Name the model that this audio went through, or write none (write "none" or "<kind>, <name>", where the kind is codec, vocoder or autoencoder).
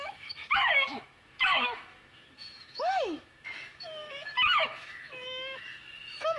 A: autoencoder, DAC-VAE